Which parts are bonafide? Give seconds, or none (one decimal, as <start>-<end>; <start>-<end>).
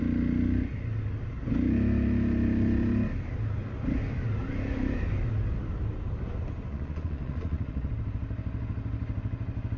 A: 0.0-6.7; 7.9-9.8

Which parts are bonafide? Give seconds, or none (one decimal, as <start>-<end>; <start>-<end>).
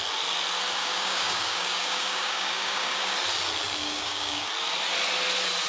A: 0.0-0.8; 3.1-3.8; 4.5-5.7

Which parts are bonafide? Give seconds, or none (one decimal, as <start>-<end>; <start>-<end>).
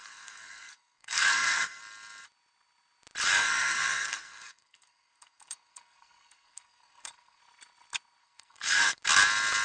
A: 1.8-3.3; 7.4-8.2; 9.0-9.6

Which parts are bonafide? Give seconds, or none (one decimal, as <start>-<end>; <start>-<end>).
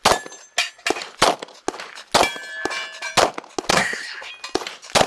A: 0.0-3.7; 4.3-5.1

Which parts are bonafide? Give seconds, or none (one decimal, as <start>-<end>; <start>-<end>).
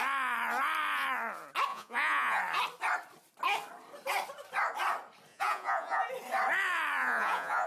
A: 0.0-1.7; 2.4-5.3; 6.1-7.0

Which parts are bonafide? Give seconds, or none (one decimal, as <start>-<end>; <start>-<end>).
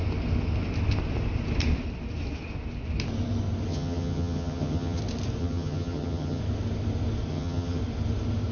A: 0.0-3.7; 5.0-5.4; 6.4-7.3; 7.8-8.5